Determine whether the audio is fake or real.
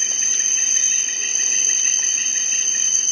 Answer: real